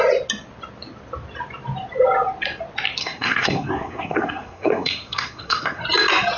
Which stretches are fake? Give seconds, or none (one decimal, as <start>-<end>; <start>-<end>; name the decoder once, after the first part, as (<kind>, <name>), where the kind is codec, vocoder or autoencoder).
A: 3.0-5.8 (codec, SNAC)